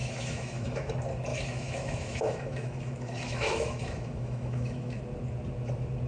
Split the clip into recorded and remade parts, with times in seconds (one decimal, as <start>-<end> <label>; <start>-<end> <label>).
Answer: 0.0-0.9 remade; 0.9-1.3 recorded; 1.3-5.0 remade; 5.0-6.1 recorded